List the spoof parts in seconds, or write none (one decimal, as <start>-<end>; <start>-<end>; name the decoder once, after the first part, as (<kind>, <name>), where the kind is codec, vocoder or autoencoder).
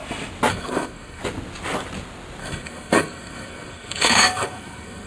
0.5-1.2 (codec, SNAC); 2.4-5.1